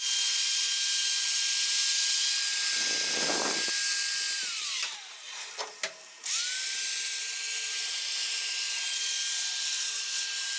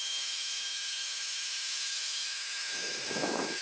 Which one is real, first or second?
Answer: first